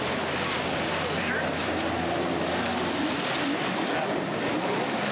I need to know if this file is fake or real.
real